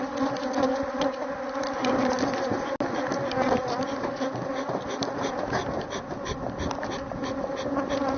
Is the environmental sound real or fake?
real